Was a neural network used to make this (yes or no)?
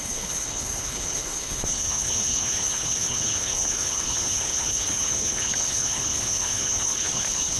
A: yes